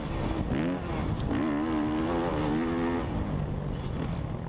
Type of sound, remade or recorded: recorded